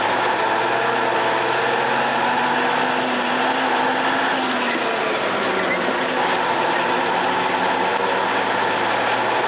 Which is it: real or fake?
real